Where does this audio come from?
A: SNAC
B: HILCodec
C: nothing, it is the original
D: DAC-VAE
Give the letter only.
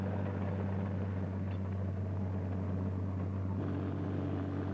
C